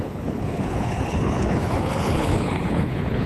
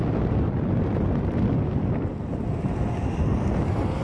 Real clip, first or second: second